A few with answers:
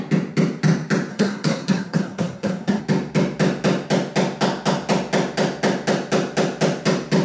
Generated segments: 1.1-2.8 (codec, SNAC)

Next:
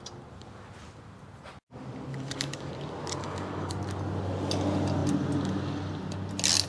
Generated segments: 2.1-2.7 (codec, DAC); 3.2-3.7

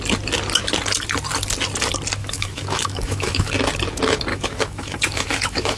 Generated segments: 2.2-3.5 (autoencoder, DAC-VAE); 4.3-5.8